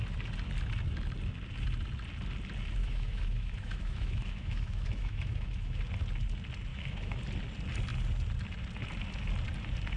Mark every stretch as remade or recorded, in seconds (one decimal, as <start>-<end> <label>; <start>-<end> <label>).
0.0-2.8 recorded; 2.8-5.8 remade; 5.8-6.7 recorded; 6.7-7.2 remade; 7.2-10.0 recorded